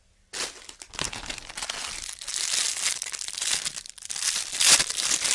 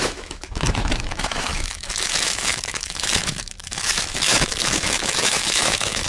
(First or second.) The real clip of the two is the first